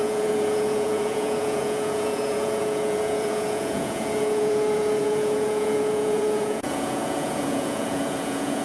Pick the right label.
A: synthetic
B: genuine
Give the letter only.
A